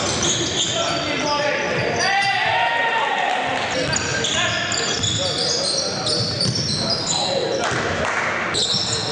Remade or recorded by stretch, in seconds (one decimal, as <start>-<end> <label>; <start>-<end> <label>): 0.0-9.1 recorded